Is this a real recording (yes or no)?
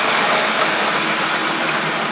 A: yes